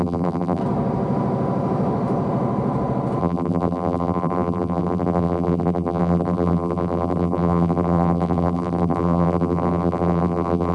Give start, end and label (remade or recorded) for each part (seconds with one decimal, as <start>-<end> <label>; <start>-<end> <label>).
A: 0.0-0.6 remade; 0.6-3.2 recorded; 3.2-10.7 remade